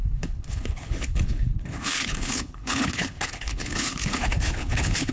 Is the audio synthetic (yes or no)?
yes